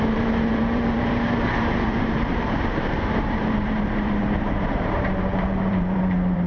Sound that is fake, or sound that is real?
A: fake